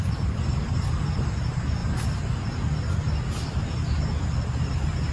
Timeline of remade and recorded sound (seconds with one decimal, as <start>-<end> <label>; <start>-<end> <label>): 0.0-5.1 recorded